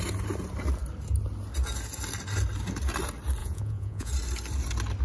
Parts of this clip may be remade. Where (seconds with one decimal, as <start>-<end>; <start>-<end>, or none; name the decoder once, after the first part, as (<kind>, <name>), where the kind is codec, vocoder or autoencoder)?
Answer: 3.4-4.1 (vocoder, Vocos)